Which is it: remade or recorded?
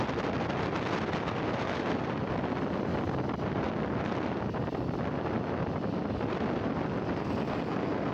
recorded